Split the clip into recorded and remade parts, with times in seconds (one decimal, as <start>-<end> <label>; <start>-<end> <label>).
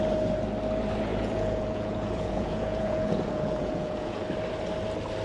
0.0-1.1 recorded; 1.1-4.2 remade; 4.2-5.2 recorded